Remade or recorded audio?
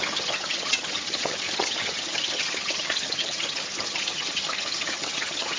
remade